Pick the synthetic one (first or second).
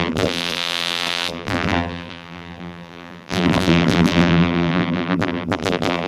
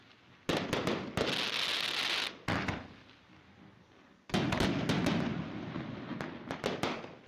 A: first